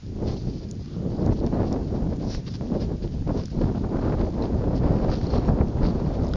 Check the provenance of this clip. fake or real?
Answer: real